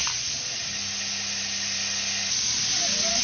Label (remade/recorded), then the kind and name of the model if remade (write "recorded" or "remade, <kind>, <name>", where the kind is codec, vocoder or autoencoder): recorded